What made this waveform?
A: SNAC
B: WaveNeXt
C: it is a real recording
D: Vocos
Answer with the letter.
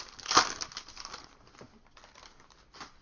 C